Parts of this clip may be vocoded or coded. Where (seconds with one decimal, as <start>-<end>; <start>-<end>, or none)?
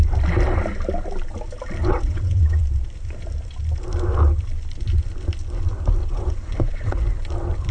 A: 1.8-2.6; 6.0-7.0